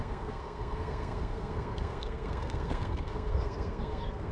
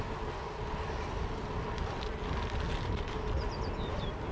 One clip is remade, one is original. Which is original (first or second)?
second